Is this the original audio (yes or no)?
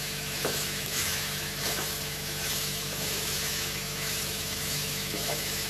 no